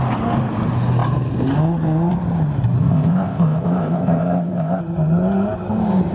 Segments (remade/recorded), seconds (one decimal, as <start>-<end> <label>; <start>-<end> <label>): 0.0-2.8 recorded; 2.8-4.8 remade; 4.8-6.1 recorded